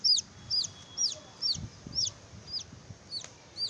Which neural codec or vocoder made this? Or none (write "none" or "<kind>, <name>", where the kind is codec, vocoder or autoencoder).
none